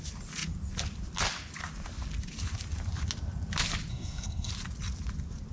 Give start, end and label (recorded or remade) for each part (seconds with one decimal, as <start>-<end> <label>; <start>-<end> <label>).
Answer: 0.0-3.9 recorded; 3.9-4.5 remade; 4.5-5.5 recorded